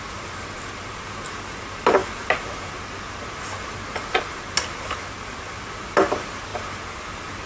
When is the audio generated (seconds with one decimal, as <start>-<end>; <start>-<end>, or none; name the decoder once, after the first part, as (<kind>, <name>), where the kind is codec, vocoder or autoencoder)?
none